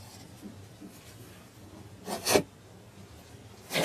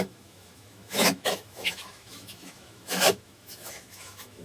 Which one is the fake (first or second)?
second